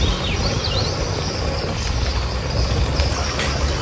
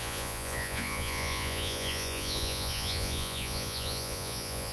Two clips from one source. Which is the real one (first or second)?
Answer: first